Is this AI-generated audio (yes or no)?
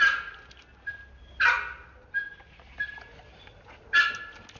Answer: no